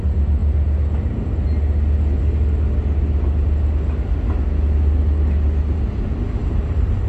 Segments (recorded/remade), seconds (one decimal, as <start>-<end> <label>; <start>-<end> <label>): 0.0-6.4 recorded; 6.4-7.1 remade